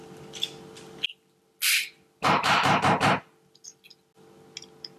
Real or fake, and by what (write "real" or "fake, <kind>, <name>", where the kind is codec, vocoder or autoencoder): real